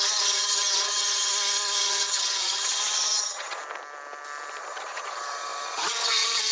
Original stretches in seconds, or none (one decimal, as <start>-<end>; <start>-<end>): 1.3-1.8; 3.6-4.6